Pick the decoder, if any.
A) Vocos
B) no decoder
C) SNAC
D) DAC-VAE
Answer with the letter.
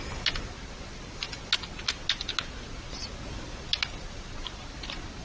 B